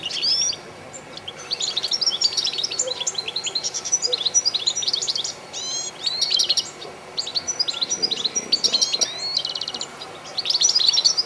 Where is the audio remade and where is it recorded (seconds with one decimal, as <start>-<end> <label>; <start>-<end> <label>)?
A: 0.0-4.1 remade; 4.1-4.6 recorded; 4.6-7.3 remade; 7.3-9.5 recorded; 9.5-11.3 remade